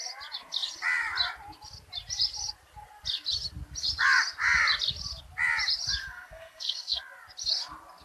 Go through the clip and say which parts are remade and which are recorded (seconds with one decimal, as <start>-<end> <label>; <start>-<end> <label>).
0.0-6.0 recorded; 6.0-7.0 remade; 7.0-8.0 recorded